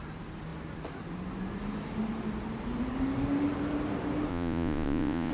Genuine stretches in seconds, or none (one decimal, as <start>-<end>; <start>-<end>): 0.0-4.3